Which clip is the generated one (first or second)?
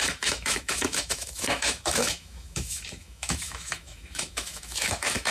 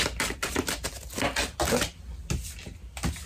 first